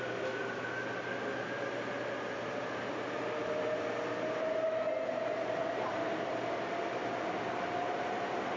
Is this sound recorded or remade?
recorded